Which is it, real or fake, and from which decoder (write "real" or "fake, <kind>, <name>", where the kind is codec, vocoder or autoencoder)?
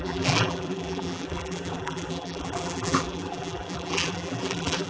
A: fake, vocoder, BigVGAN v2